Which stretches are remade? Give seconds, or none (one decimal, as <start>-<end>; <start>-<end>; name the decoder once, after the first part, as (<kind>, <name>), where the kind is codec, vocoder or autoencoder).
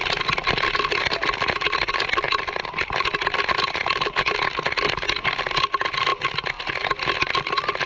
none